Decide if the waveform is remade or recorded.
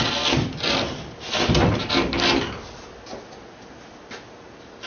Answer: recorded